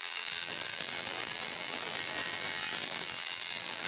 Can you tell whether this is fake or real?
fake